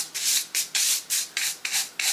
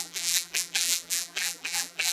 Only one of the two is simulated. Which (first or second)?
second